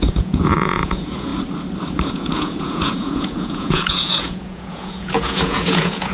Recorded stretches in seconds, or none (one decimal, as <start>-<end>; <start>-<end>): 1.3-2.1